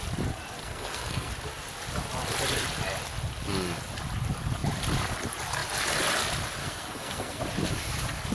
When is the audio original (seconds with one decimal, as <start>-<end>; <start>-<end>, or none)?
0.0-0.6; 1.3-6.6; 7.4-8.3